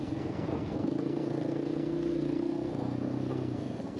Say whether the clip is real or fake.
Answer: fake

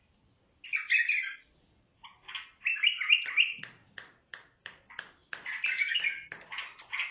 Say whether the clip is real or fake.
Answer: real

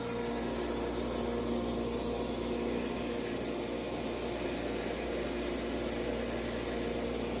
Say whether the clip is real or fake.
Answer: real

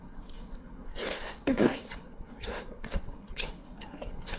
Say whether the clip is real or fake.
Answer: fake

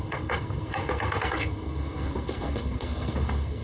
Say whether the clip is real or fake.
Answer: fake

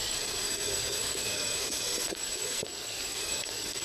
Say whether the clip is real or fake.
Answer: fake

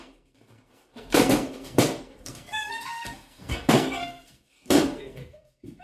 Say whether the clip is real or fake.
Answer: fake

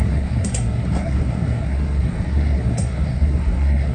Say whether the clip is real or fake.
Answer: fake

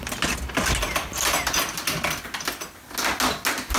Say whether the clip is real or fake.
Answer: real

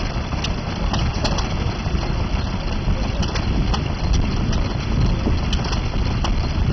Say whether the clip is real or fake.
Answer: real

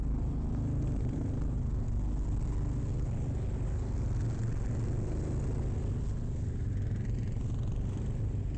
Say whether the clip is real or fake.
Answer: real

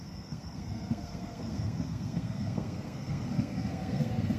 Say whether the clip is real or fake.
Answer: fake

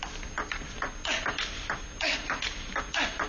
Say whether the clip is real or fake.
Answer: real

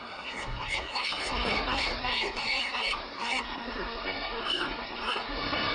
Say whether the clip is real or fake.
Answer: fake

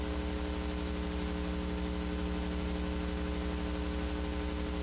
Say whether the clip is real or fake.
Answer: real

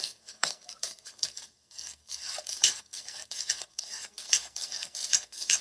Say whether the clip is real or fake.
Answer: fake